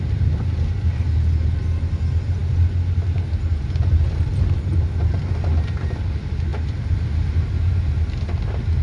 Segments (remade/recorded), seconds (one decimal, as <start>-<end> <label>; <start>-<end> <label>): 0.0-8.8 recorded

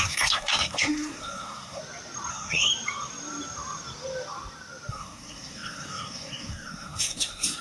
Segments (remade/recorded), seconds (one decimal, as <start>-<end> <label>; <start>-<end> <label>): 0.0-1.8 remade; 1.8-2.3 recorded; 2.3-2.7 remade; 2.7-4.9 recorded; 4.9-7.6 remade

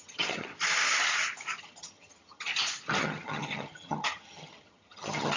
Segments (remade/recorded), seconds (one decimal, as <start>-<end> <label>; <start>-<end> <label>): 0.0-0.5 remade; 0.5-1.6 recorded; 1.6-2.5 remade; 2.5-3.0 recorded; 3.0-5.4 remade

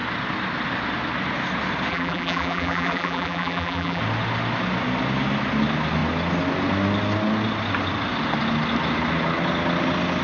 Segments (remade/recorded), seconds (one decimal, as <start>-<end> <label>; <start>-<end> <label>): 0.0-1.9 recorded; 1.9-4.0 remade; 4.0-10.2 recorded